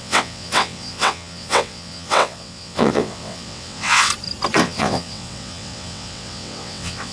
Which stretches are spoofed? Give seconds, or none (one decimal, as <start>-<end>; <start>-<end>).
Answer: 0.0-4.1; 4.6-7.1